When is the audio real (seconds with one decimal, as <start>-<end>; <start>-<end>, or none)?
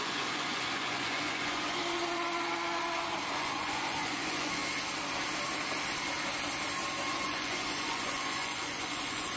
1.8-3.3; 4.6-7.1